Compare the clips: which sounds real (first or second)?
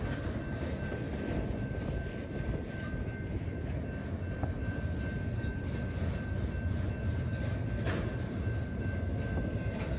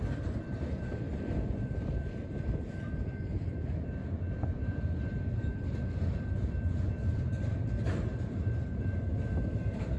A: first